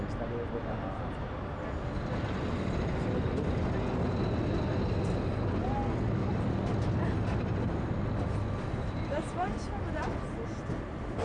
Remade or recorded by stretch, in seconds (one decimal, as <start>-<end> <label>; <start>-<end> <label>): 0.0-11.2 recorded